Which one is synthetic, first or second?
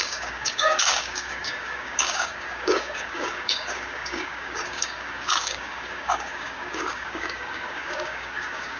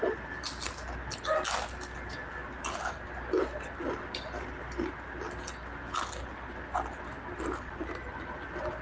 first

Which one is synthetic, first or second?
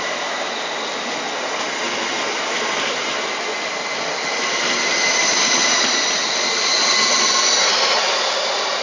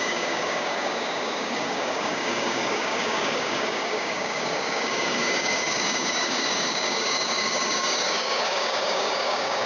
second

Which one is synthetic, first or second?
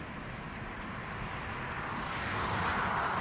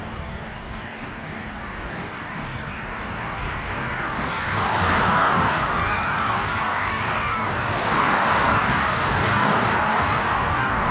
second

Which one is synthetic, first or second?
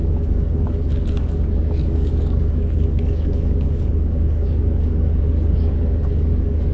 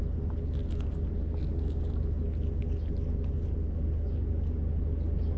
first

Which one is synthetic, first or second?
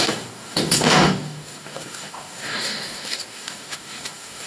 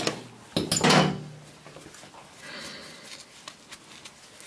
first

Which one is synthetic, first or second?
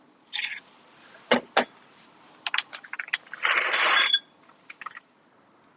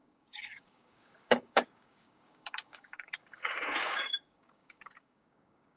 second